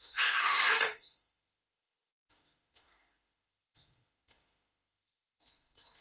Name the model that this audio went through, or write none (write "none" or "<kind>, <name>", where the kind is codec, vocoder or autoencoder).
autoencoder, DAC-VAE